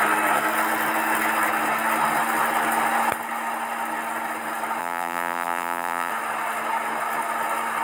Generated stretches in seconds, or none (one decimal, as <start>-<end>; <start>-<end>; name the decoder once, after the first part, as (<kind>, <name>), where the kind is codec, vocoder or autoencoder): 4.8-6.1 (vocoder, BigVGAN v2)